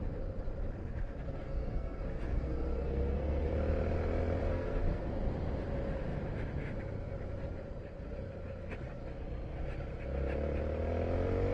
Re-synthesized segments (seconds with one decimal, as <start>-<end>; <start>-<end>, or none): 0.8-3.5; 4.4-5.1